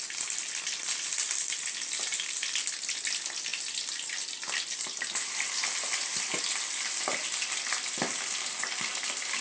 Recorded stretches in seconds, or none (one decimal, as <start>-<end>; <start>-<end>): 0.0-9.4